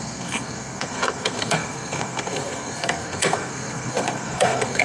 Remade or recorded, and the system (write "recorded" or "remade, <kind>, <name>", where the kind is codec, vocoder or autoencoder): remade, codec, SNAC